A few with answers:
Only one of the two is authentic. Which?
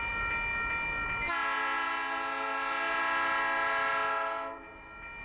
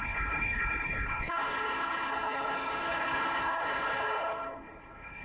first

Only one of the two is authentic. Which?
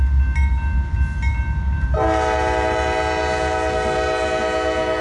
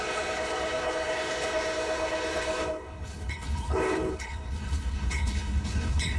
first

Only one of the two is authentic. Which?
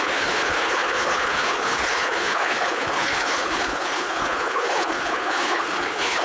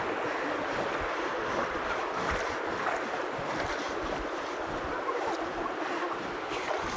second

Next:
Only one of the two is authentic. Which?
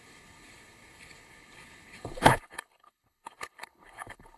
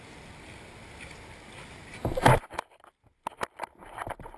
second